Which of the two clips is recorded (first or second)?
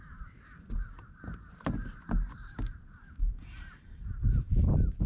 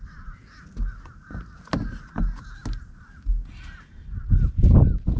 second